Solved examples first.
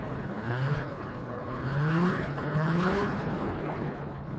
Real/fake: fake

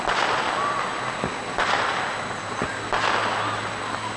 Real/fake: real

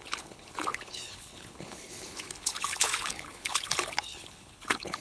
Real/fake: fake